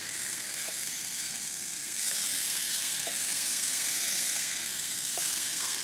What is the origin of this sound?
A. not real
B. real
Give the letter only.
A